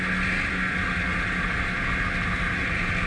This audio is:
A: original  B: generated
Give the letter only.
A